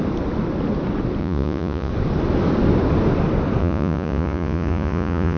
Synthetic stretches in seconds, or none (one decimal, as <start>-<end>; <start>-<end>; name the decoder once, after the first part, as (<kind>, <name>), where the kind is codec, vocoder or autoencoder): 1.2-1.9 (vocoder, Vocos); 3.6-5.4